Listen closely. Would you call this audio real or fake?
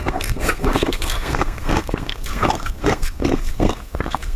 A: fake